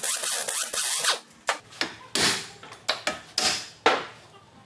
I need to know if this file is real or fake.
real